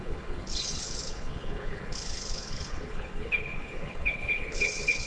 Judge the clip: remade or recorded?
remade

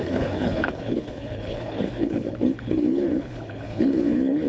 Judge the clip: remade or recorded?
remade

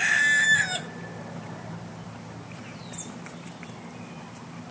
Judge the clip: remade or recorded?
recorded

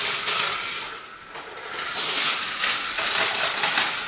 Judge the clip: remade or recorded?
recorded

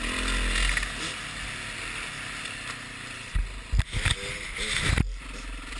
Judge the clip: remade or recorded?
recorded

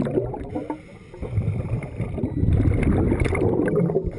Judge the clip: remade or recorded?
recorded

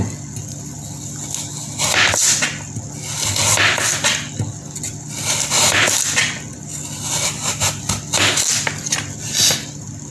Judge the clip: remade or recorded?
recorded